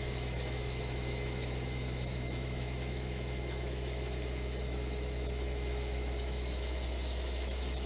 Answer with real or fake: fake